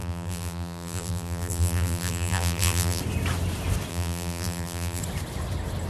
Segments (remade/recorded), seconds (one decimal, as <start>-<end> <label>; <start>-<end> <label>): 0.0-3.0 remade; 3.0-3.9 recorded; 3.9-5.0 remade; 5.0-5.9 recorded

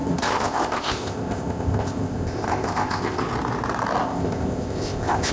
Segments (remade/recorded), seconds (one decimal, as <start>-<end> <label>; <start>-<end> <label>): 0.0-3.2 remade; 3.2-4.0 recorded; 4.0-5.3 remade

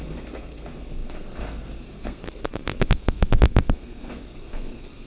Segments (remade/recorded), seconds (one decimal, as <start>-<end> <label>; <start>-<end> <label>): 0.0-5.1 remade

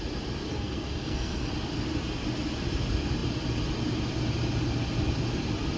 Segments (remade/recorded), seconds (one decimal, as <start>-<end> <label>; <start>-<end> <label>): 0.0-0.5 recorded; 0.5-1.5 remade; 1.5-5.8 recorded

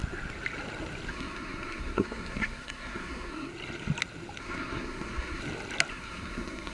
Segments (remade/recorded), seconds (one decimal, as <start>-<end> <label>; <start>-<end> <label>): 0.0-1.1 recorded; 1.1-3.5 remade; 3.5-4.4 recorded; 4.4-5.4 remade; 5.4-5.9 recorded; 5.9-6.7 remade

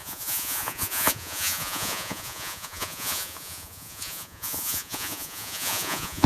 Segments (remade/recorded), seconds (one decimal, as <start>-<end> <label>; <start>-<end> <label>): 0.0-6.3 remade